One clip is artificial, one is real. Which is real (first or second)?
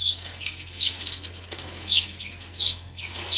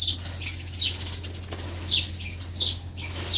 second